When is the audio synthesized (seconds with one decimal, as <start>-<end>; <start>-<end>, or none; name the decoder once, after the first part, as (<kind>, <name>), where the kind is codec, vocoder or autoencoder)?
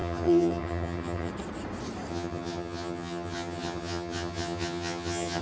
0.0-1.3 (vocoder, HiFi-GAN); 2.1-5.4